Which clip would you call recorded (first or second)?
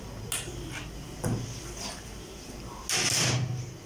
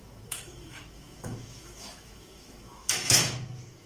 first